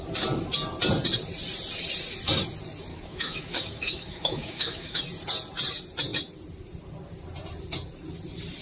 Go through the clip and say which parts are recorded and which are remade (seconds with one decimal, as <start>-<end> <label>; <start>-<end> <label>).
0.0-2.9 recorded; 2.9-5.0 remade; 5.0-8.6 recorded